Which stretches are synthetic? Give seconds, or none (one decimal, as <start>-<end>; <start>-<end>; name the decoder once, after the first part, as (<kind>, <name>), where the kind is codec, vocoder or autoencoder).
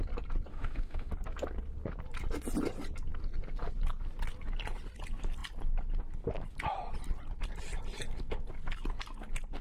0.5-1.1 (autoencoder, DAC-VAE)